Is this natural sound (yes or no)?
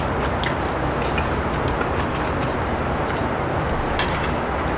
yes